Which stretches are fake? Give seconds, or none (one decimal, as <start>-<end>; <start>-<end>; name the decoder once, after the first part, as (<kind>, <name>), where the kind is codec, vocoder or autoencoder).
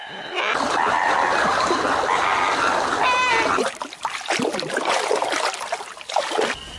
none